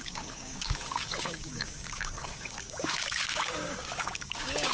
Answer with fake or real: fake